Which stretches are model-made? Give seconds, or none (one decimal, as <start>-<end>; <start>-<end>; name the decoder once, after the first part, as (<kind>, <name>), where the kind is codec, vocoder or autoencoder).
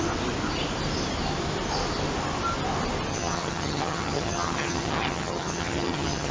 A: 3.1-6.3 (vocoder, HiFi-GAN)